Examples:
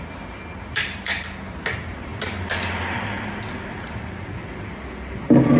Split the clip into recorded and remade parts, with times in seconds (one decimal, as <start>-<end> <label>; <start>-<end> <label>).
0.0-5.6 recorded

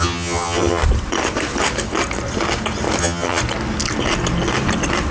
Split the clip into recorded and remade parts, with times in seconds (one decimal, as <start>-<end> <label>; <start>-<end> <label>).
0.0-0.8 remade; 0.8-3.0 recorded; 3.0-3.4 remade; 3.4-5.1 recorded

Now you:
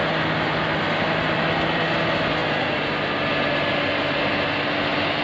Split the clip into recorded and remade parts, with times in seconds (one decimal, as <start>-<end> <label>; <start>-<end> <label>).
0.0-5.2 recorded